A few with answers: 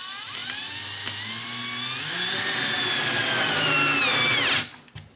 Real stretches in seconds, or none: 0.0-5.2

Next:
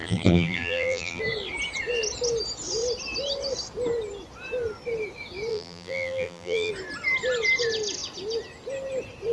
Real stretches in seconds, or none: 1.2-5.5; 6.7-9.3